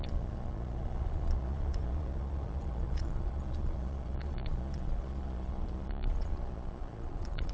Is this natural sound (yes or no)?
no